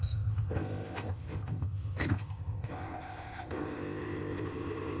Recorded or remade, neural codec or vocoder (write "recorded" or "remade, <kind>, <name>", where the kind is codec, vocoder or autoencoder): remade, codec, ZipCodec